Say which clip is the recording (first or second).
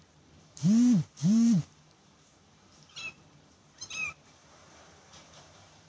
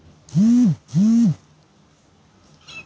second